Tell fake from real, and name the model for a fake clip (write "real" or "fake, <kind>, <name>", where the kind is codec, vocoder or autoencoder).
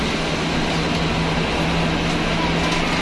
real